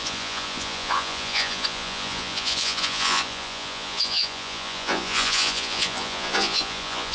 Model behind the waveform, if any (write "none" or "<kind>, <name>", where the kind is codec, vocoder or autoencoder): vocoder, Vocos